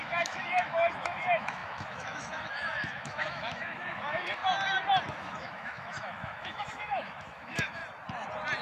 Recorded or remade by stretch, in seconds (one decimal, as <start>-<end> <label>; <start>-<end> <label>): 0.0-4.4 remade; 4.4-5.1 recorded; 5.1-7.8 remade; 7.8-8.6 recorded